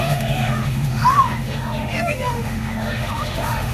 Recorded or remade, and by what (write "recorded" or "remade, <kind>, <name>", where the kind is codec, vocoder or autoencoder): remade, autoencoder, DAC-VAE